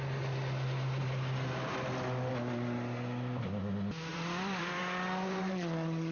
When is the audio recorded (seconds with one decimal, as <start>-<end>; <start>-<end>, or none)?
0.0-4.1; 4.8-6.1